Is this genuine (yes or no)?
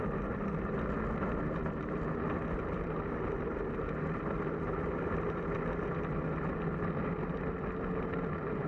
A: yes